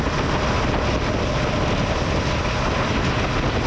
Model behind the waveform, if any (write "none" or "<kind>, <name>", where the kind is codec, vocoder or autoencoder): none